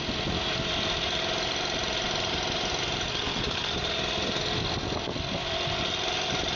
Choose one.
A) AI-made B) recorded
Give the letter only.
B